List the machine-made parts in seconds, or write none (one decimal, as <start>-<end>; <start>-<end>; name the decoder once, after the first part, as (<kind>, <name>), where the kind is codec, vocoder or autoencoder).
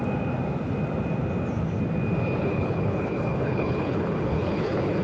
2.4-5.0 (codec, HILCodec)